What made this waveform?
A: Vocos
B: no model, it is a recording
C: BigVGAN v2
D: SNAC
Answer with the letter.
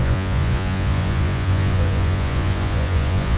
A